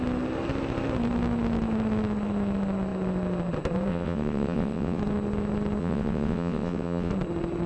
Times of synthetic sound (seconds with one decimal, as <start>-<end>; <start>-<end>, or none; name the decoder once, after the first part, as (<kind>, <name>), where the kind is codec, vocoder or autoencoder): 3.9-5.0 (vocoder, WaveNeXt); 5.8-7.1